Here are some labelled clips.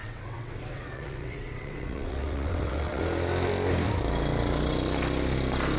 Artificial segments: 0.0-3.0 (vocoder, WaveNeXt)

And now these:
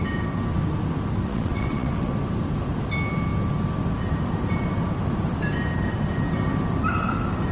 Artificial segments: 1.3-2.1 (vocoder, WaveNeXt)

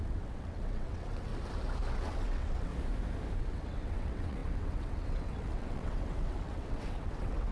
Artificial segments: 0.0-1.3 (vocoder, WaveNeXt); 1.9-2.7; 3.4-7.5

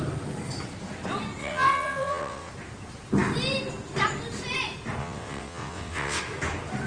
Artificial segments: 1.4-2.5 (vocoder, WaveNeXt); 5.0-6.2

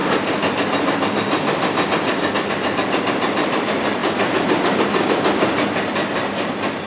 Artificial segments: none

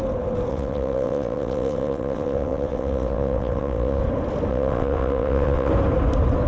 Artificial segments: 0.5-4.0 (vocoder, WaveNeXt); 4.5-5.7

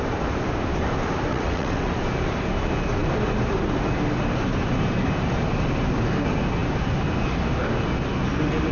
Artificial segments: 1.3-1.9 (vocoder, WaveNeXt)

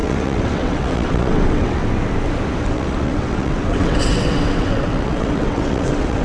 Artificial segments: 0.0-1.8 (vocoder, WaveNeXt); 2.6-6.2